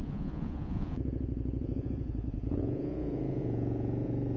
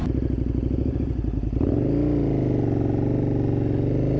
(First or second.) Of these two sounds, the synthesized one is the first